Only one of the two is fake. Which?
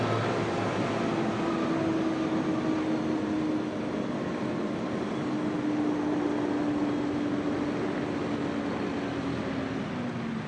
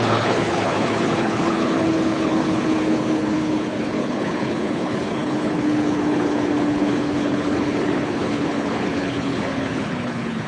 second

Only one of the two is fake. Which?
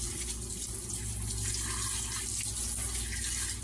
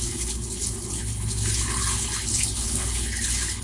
second